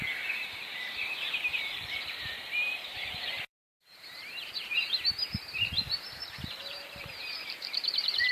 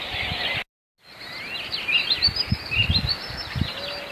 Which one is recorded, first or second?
second